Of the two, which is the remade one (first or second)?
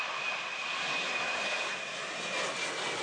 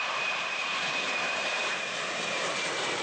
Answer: second